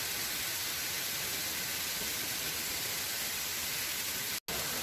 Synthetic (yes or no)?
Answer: no